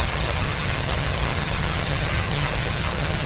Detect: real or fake fake